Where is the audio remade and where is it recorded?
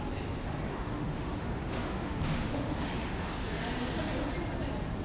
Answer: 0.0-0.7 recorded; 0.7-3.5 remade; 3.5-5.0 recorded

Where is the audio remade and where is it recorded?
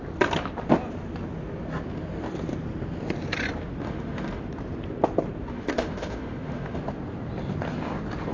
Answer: 0.0-3.8 recorded; 3.8-4.4 remade; 4.4-5.5 recorded; 5.5-6.8 remade; 6.8-8.3 recorded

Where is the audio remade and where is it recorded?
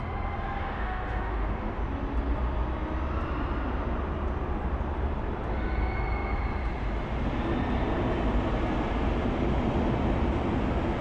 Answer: 0.0-0.6 recorded; 0.6-1.8 remade; 1.8-11.0 recorded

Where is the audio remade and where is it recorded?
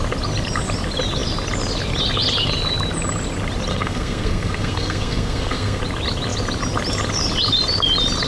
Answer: 0.0-3.7 recorded; 3.7-5.8 remade; 5.8-8.3 recorded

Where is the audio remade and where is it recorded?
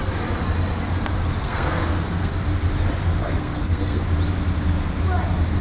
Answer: 0.0-1.4 recorded; 1.4-2.3 remade; 2.3-3.2 recorded; 3.2-4.0 remade; 4.0-5.6 recorded